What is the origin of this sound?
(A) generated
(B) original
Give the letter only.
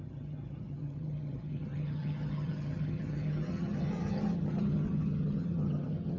A